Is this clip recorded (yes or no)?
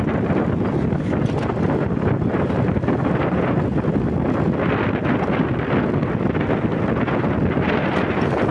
yes